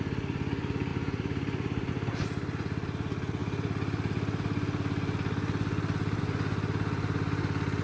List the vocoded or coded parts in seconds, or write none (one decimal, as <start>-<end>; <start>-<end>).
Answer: 0.9-1.9

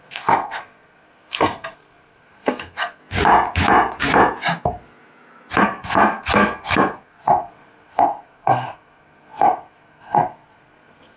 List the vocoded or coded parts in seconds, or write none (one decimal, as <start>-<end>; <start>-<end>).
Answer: 0.0-3.0; 5.6-11.2

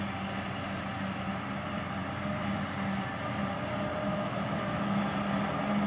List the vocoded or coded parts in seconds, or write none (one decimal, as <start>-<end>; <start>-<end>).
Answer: 4.1-5.0

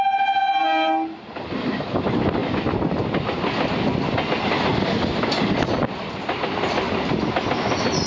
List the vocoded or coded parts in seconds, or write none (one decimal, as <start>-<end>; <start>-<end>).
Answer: none

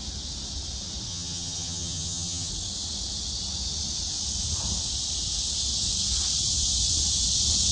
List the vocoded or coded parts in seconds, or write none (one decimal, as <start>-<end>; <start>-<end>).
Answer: 1.1-2.5

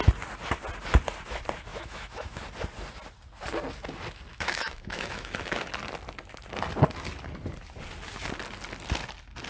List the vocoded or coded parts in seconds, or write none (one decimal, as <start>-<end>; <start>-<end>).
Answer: 1.7-2.4; 4.3-5.7